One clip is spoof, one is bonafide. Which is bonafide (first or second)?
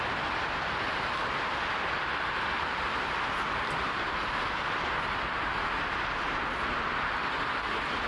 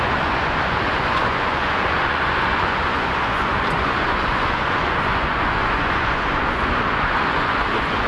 first